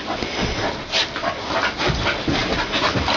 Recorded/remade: recorded